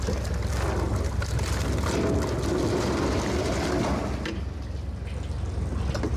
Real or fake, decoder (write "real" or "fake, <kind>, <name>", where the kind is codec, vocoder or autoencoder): real